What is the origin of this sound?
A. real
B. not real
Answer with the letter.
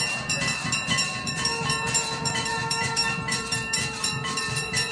B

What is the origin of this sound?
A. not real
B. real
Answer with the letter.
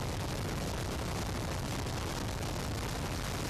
B